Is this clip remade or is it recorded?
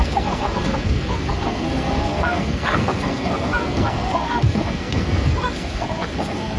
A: remade